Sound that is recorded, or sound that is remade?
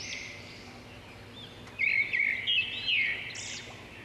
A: recorded